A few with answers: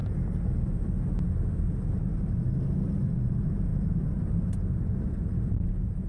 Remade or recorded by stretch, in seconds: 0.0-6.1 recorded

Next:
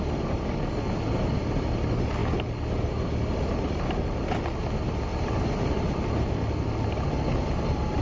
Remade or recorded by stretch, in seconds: 0.0-8.0 recorded